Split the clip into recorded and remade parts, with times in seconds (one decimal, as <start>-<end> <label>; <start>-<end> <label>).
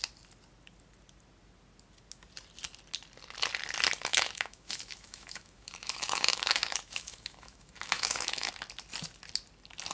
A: 0.0-4.1 recorded; 4.1-8.5 remade; 8.5-9.9 recorded